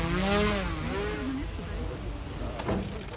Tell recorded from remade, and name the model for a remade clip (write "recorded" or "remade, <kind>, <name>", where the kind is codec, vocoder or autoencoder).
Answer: recorded